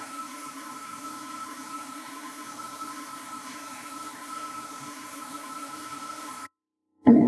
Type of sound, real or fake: fake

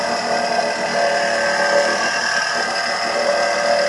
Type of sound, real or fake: real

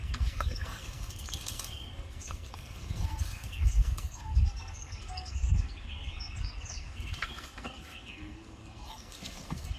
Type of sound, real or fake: fake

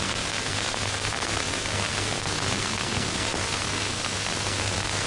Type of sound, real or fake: fake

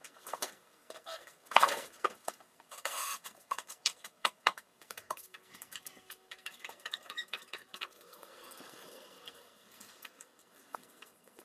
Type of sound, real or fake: fake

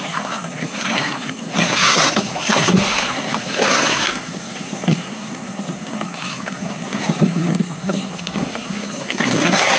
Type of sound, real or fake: fake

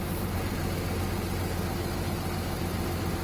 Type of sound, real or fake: real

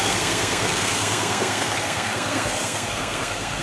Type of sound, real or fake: fake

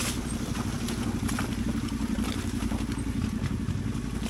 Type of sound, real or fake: real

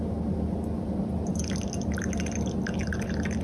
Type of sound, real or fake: real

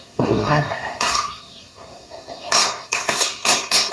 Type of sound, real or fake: fake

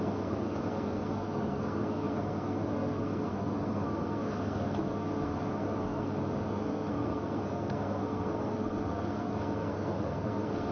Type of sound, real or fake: fake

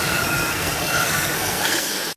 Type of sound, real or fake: fake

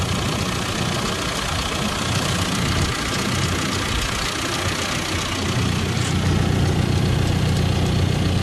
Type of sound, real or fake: real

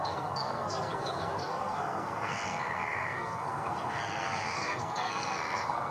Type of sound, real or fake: fake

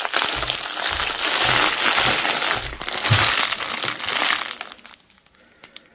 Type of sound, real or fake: real